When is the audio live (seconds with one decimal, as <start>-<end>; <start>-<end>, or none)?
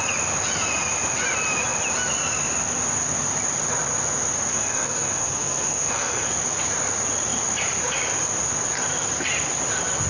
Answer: 0.0-4.5; 6.3-10.1